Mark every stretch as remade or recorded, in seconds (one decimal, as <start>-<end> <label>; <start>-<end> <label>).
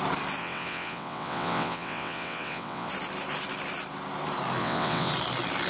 0.0-0.4 recorded; 0.4-2.9 remade; 2.9-4.6 recorded; 4.6-5.1 remade; 5.1-5.7 recorded